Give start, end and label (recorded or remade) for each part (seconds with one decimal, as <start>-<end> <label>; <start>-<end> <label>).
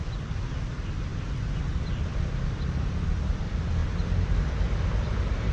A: 0.0-5.5 recorded